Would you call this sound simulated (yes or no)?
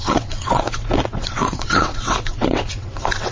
yes